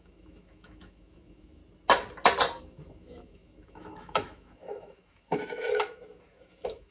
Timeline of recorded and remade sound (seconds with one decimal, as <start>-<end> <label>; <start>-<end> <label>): 0.0-1.6 remade; 1.6-2.6 recorded; 2.6-6.9 remade